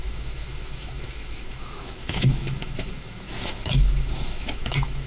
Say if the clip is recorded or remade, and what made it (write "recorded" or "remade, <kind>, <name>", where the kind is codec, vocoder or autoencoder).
remade, autoencoder, DAC-VAE